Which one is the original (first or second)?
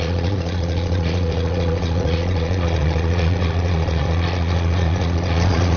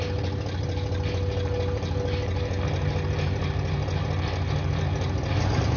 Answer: second